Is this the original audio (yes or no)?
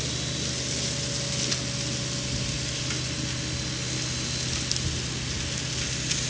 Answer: yes